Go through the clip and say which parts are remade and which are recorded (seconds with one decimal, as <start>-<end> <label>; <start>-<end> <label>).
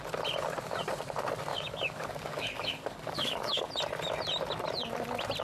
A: 0.0-1.5 recorded; 1.5-3.7 remade; 3.7-5.4 recorded